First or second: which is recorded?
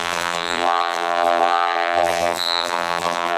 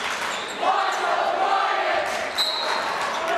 second